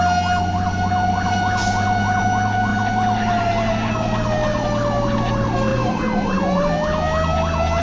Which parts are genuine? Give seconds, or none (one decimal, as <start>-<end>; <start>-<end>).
0.0-5.7; 6.6-7.8